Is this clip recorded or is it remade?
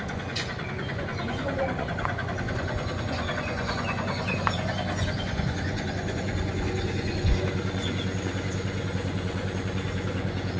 remade